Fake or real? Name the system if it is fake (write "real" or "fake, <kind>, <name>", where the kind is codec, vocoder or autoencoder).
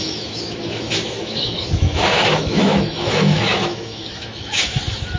fake, autoencoder, DAC-VAE